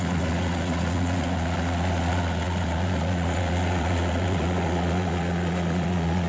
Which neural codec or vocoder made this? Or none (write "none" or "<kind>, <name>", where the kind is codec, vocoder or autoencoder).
vocoder, Vocos